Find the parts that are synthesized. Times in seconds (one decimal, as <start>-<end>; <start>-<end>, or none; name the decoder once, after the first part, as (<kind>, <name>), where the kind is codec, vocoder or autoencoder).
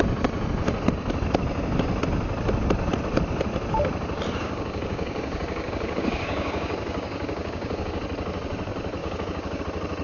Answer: 4.4-8.0 (codec, DAC); 9.0-9.6